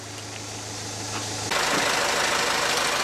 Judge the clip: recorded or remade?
recorded